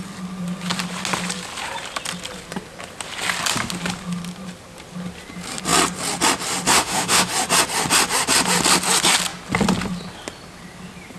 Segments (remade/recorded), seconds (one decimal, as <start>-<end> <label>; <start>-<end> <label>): 0.0-6.7 recorded; 6.7-7.3 remade; 7.3-11.2 recorded